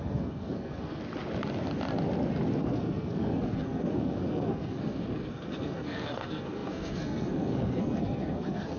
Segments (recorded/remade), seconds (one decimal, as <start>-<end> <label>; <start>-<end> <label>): 0.0-1.0 remade; 1.0-2.6 recorded; 2.6-8.8 remade